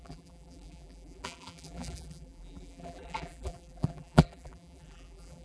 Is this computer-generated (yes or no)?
yes